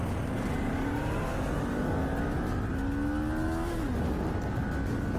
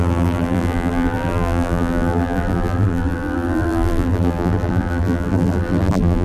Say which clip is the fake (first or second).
second